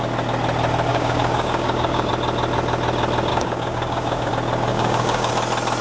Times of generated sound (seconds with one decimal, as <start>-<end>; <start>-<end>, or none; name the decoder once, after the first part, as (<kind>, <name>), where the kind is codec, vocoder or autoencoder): 0.9-2.1 (codec, DAC); 3.3-4.3; 4.7-5.3

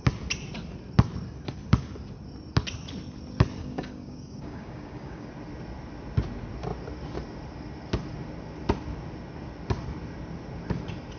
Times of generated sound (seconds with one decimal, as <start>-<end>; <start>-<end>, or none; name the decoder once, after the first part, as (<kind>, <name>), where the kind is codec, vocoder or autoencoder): 3.6-5.3 (codec, DAC)

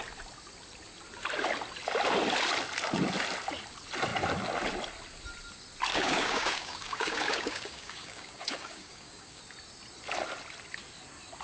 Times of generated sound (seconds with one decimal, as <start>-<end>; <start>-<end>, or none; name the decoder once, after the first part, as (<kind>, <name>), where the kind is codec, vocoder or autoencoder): 5.9-9.4 (codec, DAC)

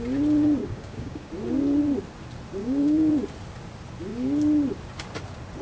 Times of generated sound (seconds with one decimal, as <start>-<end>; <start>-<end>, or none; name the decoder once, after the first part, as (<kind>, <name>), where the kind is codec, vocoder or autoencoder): 0.6-1.3 (codec, DAC); 2.6-3.1